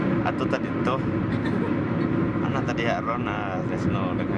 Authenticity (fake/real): real